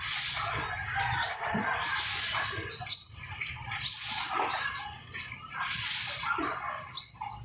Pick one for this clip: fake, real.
real